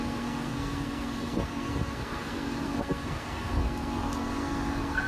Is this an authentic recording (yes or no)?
no